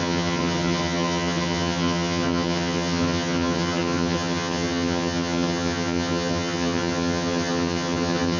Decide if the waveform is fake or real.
fake